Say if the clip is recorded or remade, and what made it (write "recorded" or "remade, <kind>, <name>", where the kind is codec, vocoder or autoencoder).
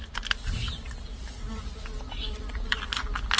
recorded